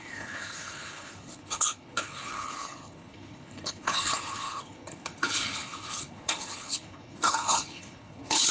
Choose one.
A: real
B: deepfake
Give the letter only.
B